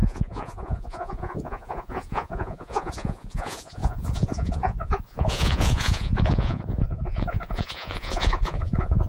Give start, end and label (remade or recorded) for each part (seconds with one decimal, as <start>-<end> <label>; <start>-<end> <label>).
0.0-9.1 remade

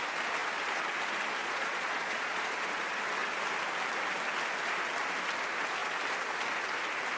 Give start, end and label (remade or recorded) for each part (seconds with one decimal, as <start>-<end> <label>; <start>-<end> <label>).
0.0-1.4 recorded; 1.4-2.4 remade; 2.4-7.2 recorded